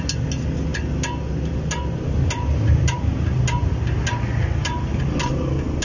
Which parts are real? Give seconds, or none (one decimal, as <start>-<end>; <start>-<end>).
0.0-5.8